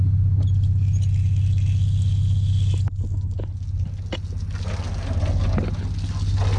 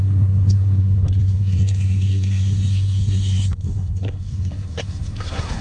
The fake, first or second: second